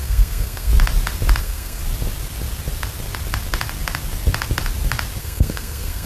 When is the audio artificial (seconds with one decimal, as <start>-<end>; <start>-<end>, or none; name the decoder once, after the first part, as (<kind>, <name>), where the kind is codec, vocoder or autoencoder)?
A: 0.0-0.7 (codec, SNAC); 1.4-1.8; 5.2-6.1